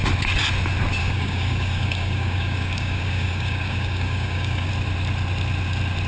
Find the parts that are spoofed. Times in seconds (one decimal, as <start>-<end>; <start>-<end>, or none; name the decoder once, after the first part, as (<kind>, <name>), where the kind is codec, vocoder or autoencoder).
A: 1.0-4.7 (codec, DAC)